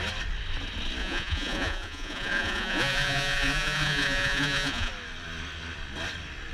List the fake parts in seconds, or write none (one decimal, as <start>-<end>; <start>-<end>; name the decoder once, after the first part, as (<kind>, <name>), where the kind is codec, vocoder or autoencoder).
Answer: 1.0-4.9 (vocoder, Vocos)